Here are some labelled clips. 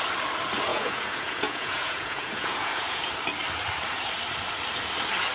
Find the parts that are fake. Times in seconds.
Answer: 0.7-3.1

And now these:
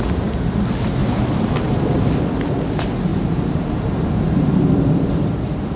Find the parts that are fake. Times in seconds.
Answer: 1.0-1.9; 3.1-4.6

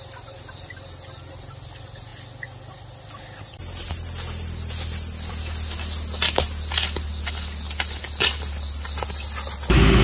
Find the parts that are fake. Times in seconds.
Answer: none

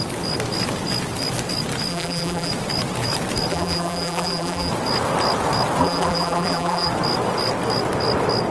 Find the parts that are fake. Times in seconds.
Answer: 1.9-2.5; 3.5-4.7; 5.8-6.9

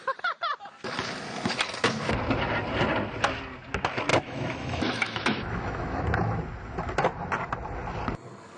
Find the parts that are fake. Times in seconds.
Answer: 4.1-6.0

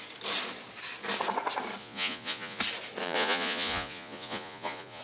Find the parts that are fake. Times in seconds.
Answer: 1.8-2.6; 3.0-5.0

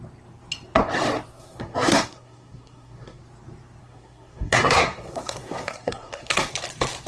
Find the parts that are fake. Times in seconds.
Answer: 1.3-3.2; 3.8-6.5

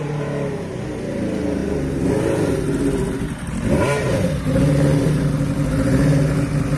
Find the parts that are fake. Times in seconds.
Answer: none